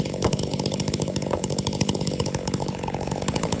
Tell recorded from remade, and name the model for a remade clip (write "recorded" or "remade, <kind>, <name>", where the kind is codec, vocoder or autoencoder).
remade, codec, HILCodec